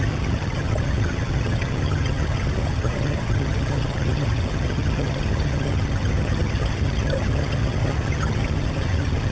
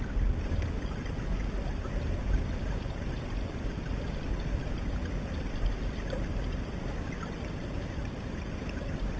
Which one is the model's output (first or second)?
first